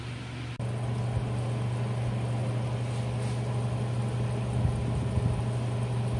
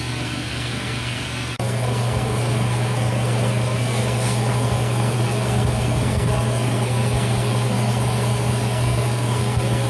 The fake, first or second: second